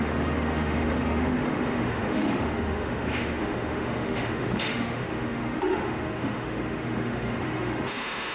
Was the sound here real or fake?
fake